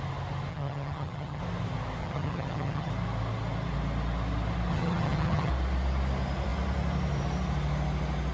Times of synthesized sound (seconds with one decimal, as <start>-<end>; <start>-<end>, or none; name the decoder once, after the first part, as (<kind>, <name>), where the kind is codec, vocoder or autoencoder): 0.5-1.4 (vocoder, HiFi-GAN); 2.0-2.9; 4.7-5.5